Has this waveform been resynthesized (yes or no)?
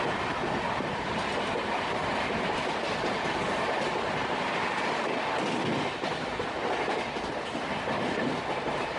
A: no